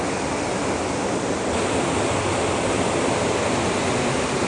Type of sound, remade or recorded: recorded